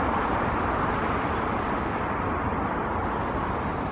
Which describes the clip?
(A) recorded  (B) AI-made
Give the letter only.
A